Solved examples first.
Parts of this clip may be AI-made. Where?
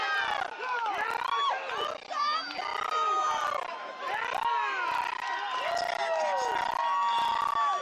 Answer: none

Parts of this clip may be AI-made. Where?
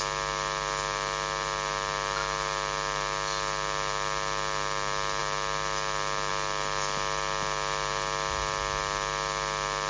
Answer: none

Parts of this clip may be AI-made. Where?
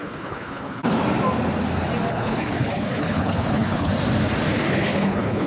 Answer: 0.0-1.0 (codec, HILCodec); 2.1-3.9; 4.7-5.5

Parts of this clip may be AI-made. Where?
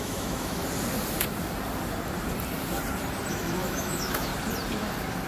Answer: 0.0-0.6 (autoencoder, DAC-VAE); 3.3-4.3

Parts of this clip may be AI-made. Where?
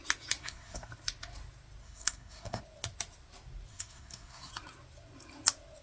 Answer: 0.4-0.9 (codec, SNAC); 1.8-2.6; 3.7-4.5